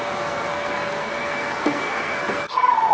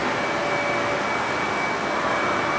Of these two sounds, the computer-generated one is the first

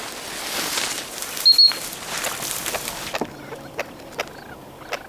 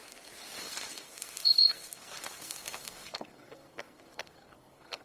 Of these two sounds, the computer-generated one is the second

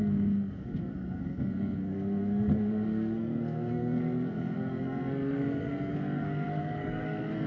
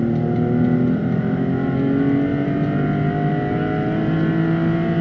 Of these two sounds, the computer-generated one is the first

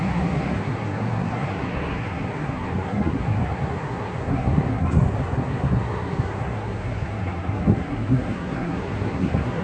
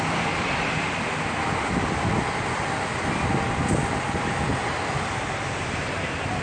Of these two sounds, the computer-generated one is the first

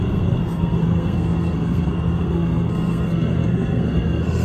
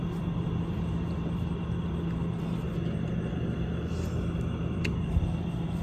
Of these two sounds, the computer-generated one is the first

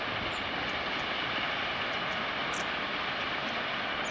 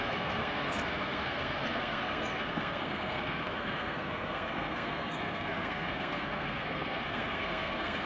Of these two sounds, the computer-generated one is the second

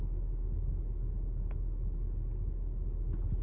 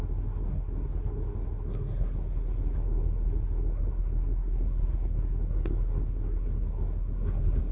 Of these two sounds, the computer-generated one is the second